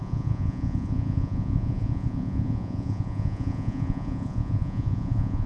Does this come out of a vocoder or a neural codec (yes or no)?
yes